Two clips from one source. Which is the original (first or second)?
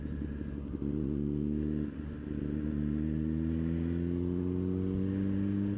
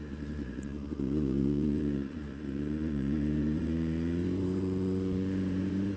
first